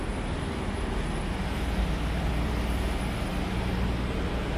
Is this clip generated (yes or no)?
no